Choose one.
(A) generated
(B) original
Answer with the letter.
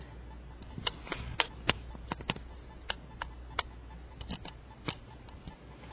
B